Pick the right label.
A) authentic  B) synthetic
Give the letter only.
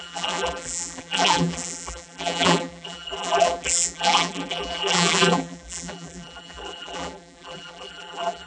B